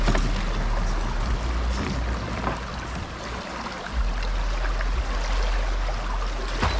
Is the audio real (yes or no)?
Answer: yes